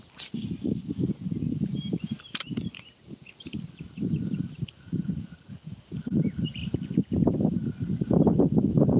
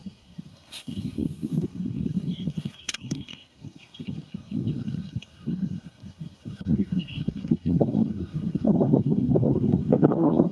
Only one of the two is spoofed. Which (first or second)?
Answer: second